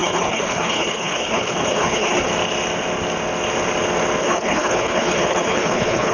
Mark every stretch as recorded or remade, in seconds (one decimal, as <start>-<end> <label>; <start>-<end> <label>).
0.0-2.3 remade; 2.3-4.2 recorded; 4.2-6.1 remade